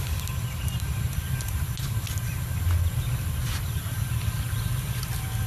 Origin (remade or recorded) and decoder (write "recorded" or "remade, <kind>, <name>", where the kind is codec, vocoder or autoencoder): recorded